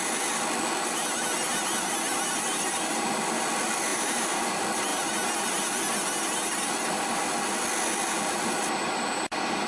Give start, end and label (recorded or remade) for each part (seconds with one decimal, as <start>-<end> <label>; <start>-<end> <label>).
0.0-3.9 recorded; 3.9-4.5 remade; 4.5-9.7 recorded